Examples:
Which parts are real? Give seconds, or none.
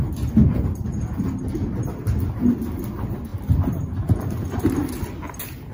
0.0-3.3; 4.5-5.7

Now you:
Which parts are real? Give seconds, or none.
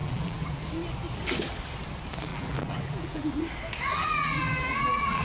0.6-2.3; 3.4-3.9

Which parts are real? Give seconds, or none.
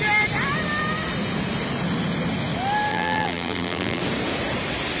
0.0-2.9; 4.0-5.0